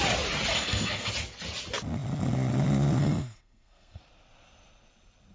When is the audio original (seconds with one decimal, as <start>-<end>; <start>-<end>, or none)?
0.0-0.5; 1.1-3.0; 4.0-5.3